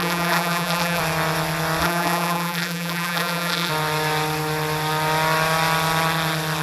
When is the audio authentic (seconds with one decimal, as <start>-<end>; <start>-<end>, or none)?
1.0-1.8; 3.7-6.6

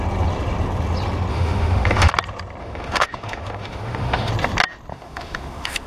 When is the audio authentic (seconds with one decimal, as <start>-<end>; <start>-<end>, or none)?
0.0-1.3; 2.1-2.6; 4.3-4.9

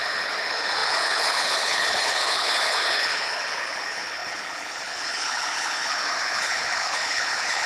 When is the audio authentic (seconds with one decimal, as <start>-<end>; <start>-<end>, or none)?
none